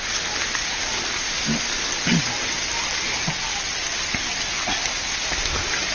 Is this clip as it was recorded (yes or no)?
yes